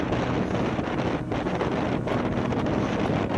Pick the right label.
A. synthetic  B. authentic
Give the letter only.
B